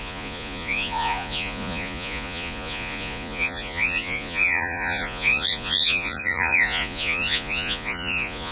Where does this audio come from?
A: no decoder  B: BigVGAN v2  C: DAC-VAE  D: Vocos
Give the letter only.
D